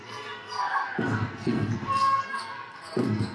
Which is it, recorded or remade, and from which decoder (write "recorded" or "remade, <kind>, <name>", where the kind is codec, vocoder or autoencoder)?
remade, codec, SNAC